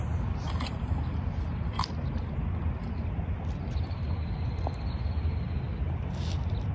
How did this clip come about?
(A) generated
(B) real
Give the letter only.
B